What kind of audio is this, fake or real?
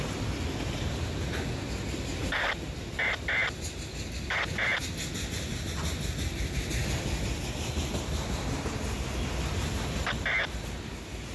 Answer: real